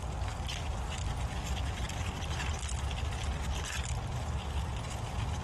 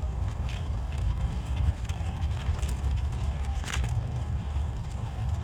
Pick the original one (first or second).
first